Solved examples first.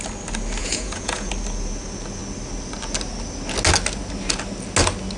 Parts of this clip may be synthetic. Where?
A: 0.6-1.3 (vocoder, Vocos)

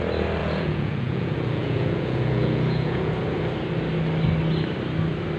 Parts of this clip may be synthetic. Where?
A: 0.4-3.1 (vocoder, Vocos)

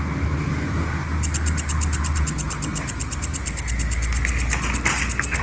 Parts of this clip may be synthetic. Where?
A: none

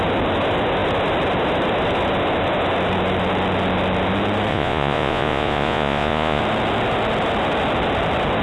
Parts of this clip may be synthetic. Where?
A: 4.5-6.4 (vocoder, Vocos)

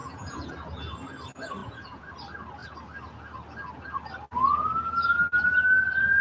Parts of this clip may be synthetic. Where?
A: 0.0-0.5 (vocoder, Vocos); 1.6-2.1